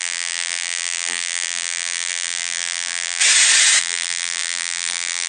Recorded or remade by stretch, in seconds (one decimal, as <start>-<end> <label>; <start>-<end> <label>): 0.0-3.2 remade; 3.2-3.8 recorded; 3.8-5.3 remade